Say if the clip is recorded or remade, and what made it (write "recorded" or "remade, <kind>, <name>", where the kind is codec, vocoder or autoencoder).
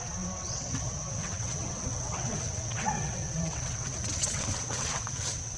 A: remade, vocoder, WaveNeXt